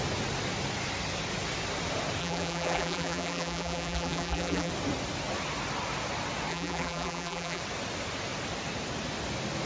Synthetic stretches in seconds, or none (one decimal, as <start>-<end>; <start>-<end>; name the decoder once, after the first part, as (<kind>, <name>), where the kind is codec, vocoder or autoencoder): 2.2-4.7 (vocoder, BigVGAN v2); 6.5-7.6